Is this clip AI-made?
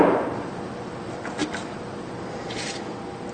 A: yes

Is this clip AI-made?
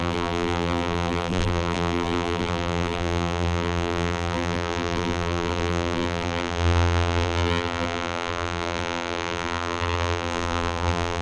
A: yes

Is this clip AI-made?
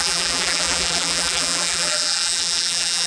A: yes